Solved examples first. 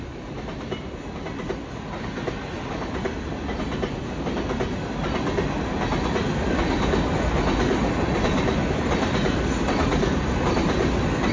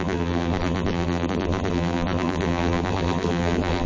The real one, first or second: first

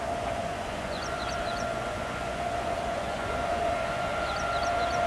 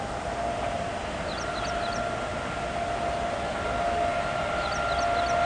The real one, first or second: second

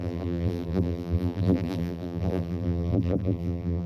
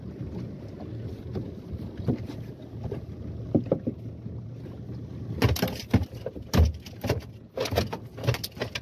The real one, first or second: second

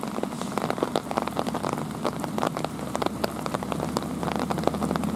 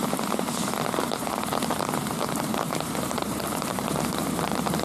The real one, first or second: first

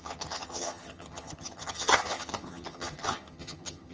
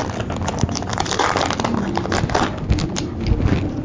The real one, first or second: second